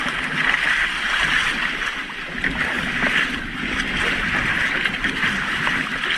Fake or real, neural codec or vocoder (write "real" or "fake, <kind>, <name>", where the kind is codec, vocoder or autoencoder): real